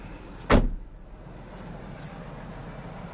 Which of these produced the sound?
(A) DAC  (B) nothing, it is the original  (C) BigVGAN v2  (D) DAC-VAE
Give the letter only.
B